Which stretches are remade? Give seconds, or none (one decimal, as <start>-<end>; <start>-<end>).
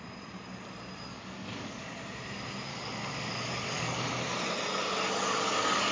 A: 1.1-2.0; 2.7-4.1; 4.8-5.9